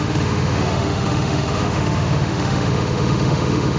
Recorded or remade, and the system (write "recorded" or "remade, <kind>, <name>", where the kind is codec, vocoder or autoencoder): remade, autoencoder, DAC-VAE